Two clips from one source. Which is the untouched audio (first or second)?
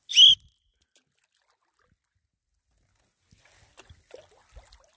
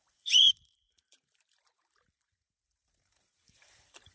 first